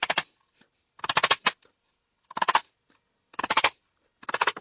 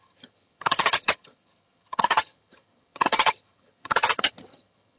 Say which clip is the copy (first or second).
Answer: second